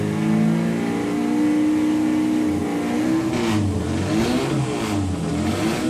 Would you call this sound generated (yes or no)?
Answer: no